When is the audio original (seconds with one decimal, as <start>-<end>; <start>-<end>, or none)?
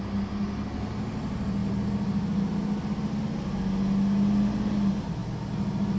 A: 0.0-6.0